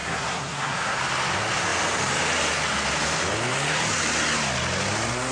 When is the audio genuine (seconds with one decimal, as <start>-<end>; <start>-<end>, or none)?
1.0-5.3